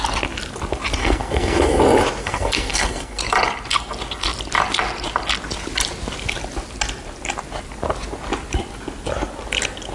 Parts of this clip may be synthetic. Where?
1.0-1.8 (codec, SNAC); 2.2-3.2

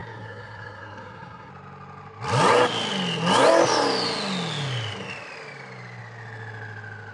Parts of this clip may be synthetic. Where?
0.0-1.5 (codec, SNAC)

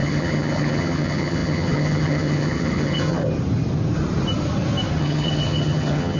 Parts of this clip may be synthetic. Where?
0.0-3.2 (vocoder, HiFi-GAN); 5.0-6.2

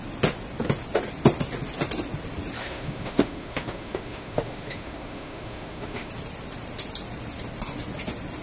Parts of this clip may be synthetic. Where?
2.6-6.1 (autoencoder, DAC-VAE)

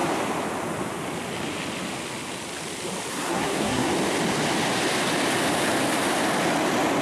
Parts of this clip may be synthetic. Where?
3.1-3.9 (codec, SNAC)

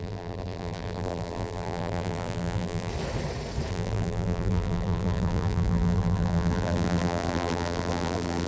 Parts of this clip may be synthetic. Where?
0.0-2.9 (vocoder, BigVGAN v2); 3.7-8.5

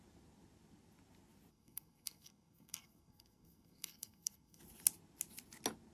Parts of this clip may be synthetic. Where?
1.5-4.6 (codec, SNAC)